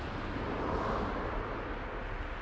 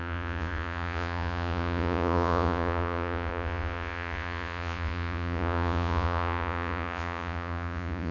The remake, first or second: second